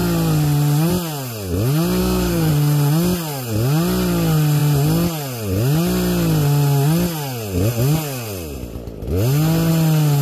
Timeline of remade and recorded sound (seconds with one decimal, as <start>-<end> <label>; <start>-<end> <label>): 0.0-2.0 recorded; 2.0-2.5 remade; 2.5-10.2 recorded